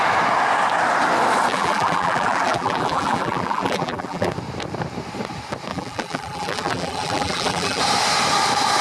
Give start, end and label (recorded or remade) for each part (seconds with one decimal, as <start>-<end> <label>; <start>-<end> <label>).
0.0-1.5 recorded; 1.5-4.3 remade; 4.3-5.7 recorded; 5.7-7.8 remade; 7.8-8.8 recorded